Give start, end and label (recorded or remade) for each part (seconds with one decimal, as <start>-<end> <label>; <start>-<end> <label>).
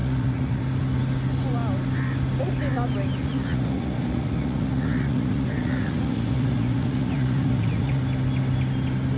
0.0-0.6 remade; 0.6-3.2 recorded; 3.2-8.0 remade; 8.0-9.2 recorded